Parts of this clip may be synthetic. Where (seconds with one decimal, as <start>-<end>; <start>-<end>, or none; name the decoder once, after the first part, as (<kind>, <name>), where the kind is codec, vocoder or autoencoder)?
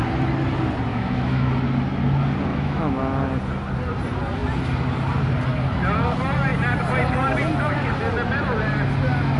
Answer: 0.9-1.5 (autoencoder, DAC-VAE); 2.5-3.0